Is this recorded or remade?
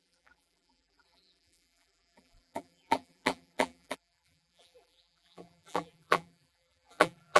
remade